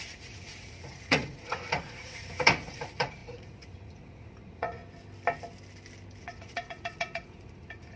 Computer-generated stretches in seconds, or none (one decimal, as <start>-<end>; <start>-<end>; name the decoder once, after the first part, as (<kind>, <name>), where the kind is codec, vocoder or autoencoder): 0.0-4.8 (vocoder, Vocos); 6.2-8.0